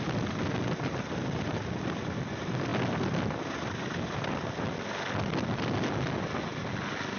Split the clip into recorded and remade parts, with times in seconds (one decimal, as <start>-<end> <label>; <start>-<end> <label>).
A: 0.0-7.2 recorded